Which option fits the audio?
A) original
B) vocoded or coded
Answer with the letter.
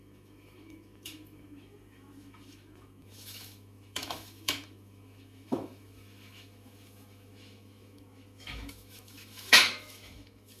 B